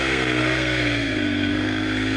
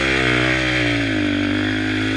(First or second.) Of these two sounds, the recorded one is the second